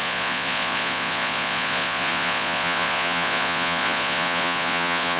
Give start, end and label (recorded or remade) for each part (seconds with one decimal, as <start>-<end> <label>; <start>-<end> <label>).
0.0-5.2 remade